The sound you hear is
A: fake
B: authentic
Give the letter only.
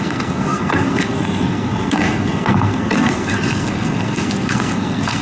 A